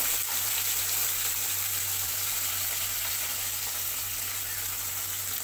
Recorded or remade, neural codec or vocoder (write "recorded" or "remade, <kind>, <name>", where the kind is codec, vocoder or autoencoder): recorded